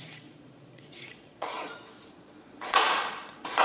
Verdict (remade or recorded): remade